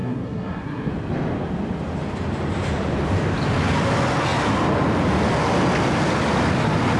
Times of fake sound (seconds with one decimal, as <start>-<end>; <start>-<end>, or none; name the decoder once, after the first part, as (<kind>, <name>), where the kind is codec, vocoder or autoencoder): 0.0-0.9 (codec, SNAC)